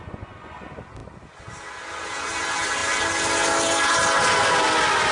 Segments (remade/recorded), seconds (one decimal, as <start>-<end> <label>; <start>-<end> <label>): 0.0-0.6 remade; 0.6-5.1 recorded